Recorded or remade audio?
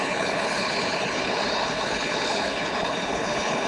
remade